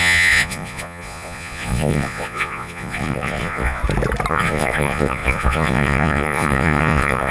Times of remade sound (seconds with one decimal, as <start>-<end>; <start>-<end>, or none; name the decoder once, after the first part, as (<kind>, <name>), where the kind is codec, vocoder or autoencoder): 0.0-3.8 (vocoder, Vocos); 4.3-7.3